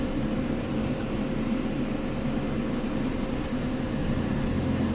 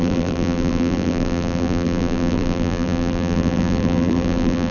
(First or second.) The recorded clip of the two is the first